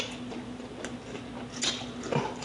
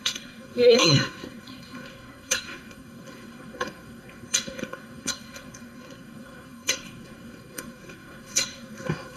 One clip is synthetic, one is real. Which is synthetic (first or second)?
second